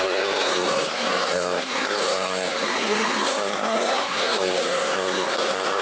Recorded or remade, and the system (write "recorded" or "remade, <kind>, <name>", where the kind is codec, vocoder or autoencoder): remade, codec, SNAC